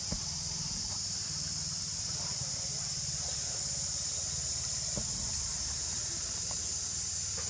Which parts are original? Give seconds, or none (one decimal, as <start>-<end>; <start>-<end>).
0.0-7.5